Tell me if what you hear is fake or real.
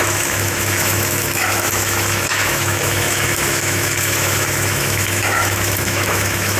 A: fake